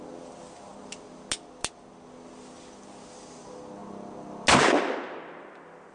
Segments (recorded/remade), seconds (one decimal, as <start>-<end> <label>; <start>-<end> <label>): 0.0-5.9 recorded